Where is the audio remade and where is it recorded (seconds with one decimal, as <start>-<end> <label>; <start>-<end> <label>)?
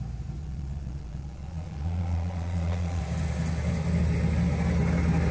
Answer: 0.0-0.4 recorded; 0.4-3.0 remade; 3.0-5.3 recorded